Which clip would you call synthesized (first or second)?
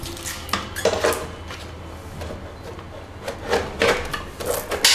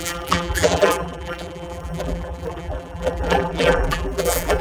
second